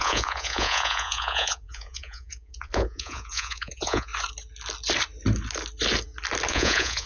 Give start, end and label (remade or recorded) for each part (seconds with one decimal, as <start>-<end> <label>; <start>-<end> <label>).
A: 0.0-4.1 remade; 4.1-6.5 recorded; 6.5-7.1 remade